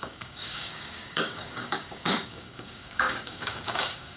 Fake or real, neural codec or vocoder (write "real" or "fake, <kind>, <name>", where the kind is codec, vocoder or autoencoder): fake, codec, DAC